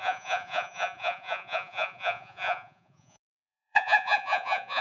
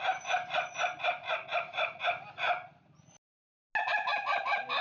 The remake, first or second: first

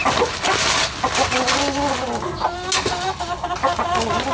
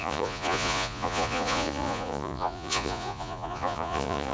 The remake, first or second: second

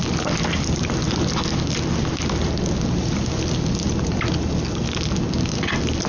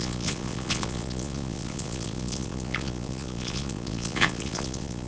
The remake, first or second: second